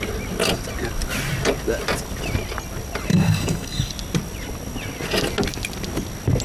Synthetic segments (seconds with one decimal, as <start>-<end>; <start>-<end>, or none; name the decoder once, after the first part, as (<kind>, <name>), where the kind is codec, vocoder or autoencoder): 3.1-3.9 (codec, DAC)